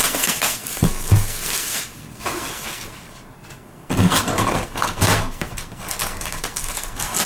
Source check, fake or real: fake